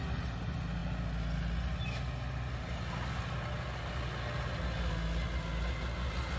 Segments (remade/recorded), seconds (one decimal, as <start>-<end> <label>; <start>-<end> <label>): 0.0-6.4 recorded